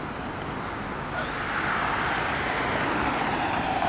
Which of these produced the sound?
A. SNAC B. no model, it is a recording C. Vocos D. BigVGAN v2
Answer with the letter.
B